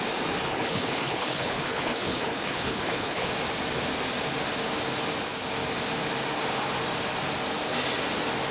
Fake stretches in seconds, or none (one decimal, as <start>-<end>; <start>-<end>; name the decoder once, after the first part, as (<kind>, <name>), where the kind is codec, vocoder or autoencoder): 0.5-3.3 (codec, HILCodec)